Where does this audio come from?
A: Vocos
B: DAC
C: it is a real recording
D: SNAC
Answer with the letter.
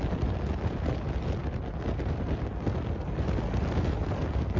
C